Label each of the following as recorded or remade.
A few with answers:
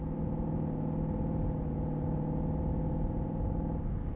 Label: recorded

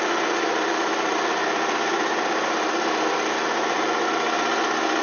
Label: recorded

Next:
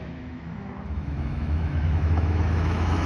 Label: remade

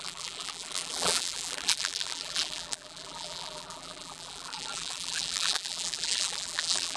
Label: remade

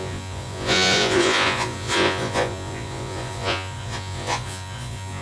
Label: remade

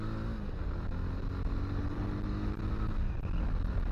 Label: recorded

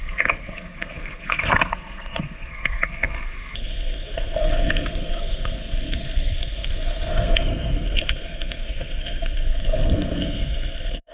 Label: remade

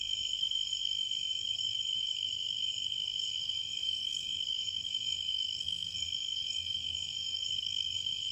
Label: remade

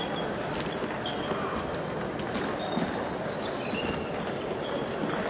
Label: recorded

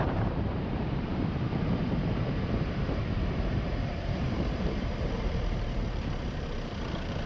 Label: remade